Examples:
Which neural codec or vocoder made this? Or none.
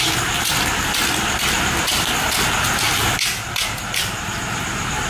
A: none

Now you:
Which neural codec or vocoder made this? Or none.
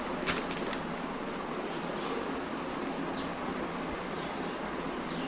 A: none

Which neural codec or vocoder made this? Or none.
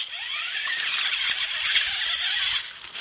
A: none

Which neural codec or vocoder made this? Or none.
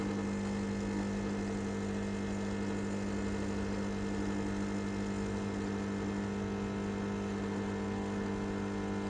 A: none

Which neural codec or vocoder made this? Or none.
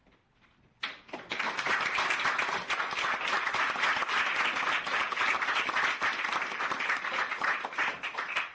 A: none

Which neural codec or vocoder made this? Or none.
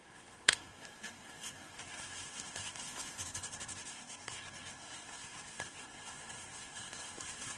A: codec, SNAC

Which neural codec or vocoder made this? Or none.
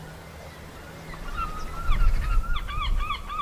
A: vocoder, BigVGAN v2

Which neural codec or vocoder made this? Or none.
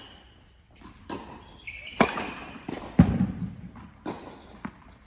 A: none